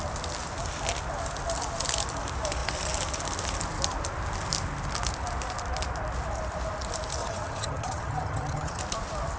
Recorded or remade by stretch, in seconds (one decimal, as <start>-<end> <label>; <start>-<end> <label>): 0.0-7.2 recorded; 7.2-8.8 remade; 8.8-9.4 recorded